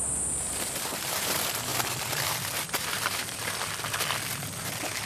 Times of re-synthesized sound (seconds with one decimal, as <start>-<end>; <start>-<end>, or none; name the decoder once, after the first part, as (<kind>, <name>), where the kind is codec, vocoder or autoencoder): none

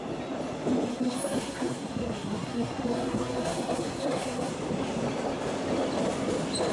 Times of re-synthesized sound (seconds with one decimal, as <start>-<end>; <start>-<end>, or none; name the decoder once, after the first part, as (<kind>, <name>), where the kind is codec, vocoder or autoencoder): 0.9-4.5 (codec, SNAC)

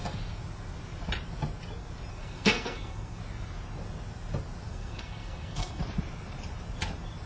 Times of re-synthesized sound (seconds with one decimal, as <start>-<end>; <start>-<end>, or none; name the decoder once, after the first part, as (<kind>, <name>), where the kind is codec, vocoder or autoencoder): 2.1-3.2 (codec, SNAC); 4.7-5.8